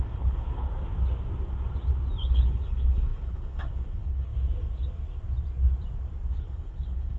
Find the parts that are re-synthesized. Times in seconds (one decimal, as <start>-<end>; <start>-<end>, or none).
0.0-0.7; 2.2-4.3; 6.3-7.2

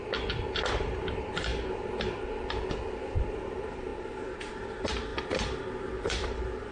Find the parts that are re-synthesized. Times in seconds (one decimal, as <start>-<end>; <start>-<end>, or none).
0.0-1.5; 3.2-6.7

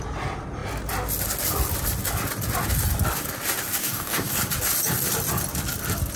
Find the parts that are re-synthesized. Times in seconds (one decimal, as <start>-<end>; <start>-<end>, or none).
3.8-4.3

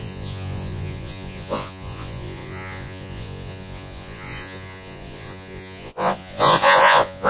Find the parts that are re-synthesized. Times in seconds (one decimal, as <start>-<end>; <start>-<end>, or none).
0.0-7.3

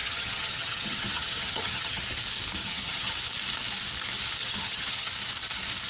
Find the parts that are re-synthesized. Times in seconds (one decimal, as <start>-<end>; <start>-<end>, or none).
0.0-2.0; 2.6-3.1; 4.4-5.1

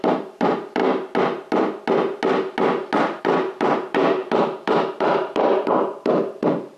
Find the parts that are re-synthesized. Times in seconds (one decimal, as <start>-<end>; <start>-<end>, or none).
0.0-0.8; 3.2-6.8

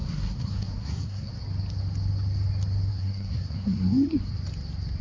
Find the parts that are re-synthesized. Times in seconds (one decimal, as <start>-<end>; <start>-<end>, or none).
0.0-1.3; 2.9-4.3

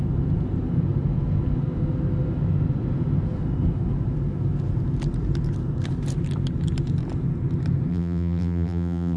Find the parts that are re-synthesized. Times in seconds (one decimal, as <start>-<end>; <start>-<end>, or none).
7.9-9.2